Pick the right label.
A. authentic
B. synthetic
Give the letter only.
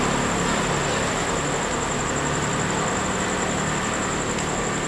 A